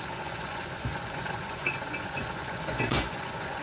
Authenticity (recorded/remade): remade